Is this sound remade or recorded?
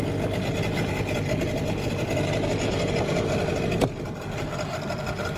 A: recorded